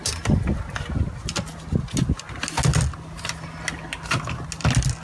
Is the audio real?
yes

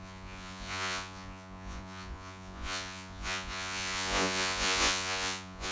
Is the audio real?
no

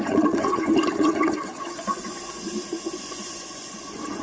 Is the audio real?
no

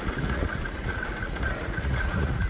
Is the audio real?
no